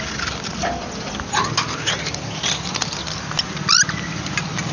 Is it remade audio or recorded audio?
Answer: recorded